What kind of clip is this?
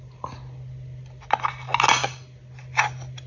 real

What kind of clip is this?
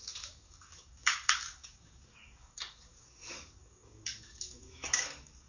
fake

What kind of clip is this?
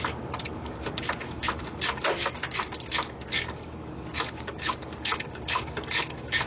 fake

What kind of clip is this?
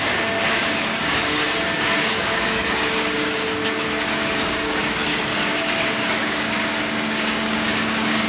fake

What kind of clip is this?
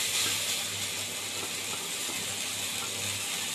real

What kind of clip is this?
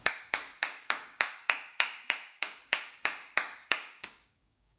fake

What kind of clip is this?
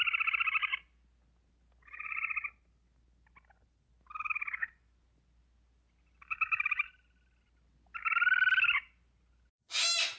real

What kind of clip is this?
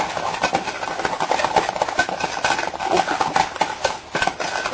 real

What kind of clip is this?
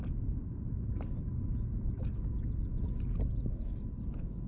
real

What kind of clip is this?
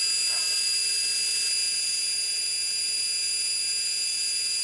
real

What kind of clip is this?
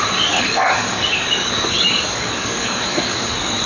fake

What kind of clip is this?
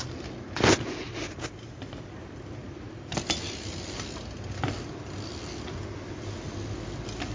real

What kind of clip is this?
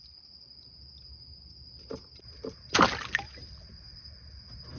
real